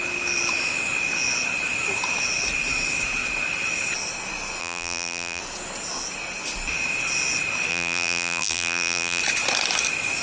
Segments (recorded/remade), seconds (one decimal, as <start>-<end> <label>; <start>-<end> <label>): 0.0-4.6 recorded; 4.6-5.4 remade; 5.4-7.7 recorded; 7.7-9.2 remade; 9.2-10.2 recorded